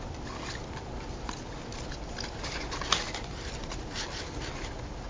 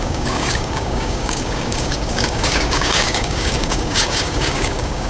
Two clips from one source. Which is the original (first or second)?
first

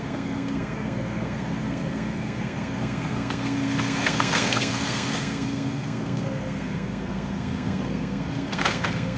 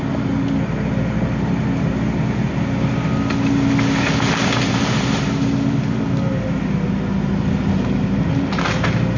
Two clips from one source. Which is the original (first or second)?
second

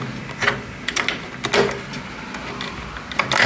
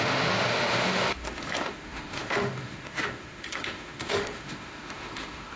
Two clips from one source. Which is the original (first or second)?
first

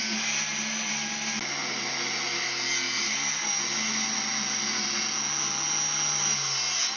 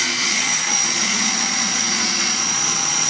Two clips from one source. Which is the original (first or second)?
first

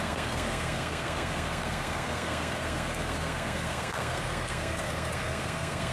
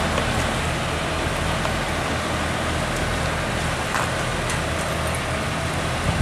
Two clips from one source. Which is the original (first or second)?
second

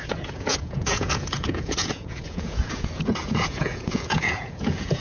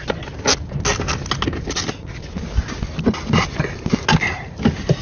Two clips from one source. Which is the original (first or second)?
second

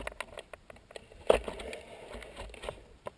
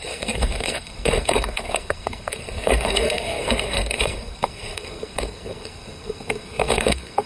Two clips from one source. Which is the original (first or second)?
first